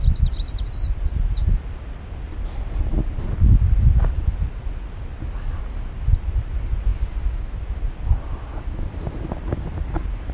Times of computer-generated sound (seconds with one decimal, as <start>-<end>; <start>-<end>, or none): none